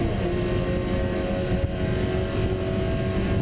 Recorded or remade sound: recorded